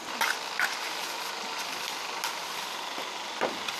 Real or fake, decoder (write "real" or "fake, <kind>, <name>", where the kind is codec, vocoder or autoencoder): real